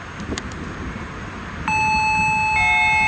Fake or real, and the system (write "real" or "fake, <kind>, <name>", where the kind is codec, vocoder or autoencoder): real